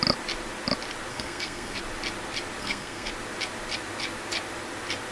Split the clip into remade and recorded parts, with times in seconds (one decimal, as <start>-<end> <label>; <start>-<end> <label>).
0.0-1.1 recorded; 1.1-1.8 remade; 1.8-2.6 recorded; 2.6-3.1 remade; 3.1-5.1 recorded